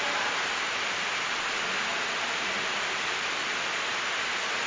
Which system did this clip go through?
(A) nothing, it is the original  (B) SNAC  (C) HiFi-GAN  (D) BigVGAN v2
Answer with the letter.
A